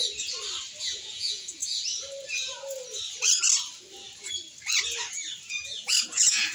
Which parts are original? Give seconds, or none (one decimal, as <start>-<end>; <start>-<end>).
0.0-0.8; 1.6-5.5